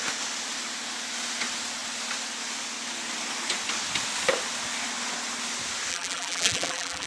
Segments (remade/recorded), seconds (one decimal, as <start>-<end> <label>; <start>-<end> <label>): 0.0-5.9 recorded; 5.9-7.1 remade